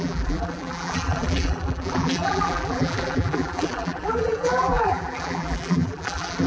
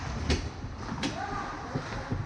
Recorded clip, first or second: second